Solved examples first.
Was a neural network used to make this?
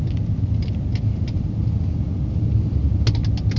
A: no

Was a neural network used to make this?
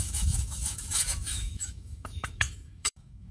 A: yes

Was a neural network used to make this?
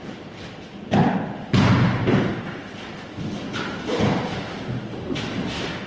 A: no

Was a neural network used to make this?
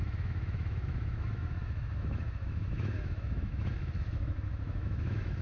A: yes